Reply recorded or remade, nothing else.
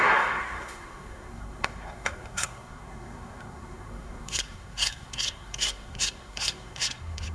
remade